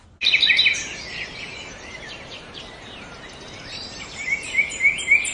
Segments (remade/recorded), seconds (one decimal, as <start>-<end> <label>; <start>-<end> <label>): 0.0-1.5 recorded; 1.5-4.7 remade; 4.7-5.3 recorded